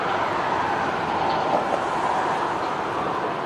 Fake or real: real